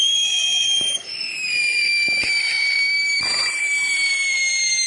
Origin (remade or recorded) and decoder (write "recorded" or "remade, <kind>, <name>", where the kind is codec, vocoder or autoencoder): remade, vocoder, BigVGAN v2